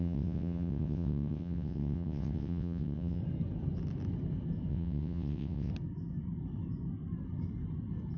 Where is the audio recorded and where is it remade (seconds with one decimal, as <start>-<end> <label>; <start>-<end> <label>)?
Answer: 0.0-3.2 remade; 3.2-4.7 recorded; 4.7-5.7 remade; 5.7-8.2 recorded